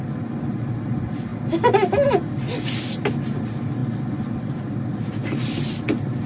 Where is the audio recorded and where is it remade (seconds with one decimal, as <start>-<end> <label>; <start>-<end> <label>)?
0.0-6.3 recorded